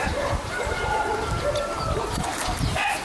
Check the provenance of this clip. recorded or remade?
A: remade